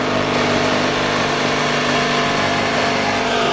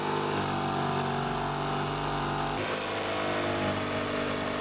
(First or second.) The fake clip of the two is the first